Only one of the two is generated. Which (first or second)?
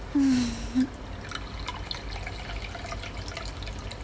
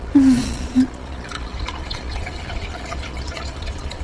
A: second